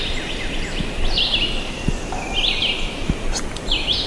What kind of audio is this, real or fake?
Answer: real